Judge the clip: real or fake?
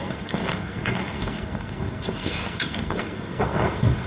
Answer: fake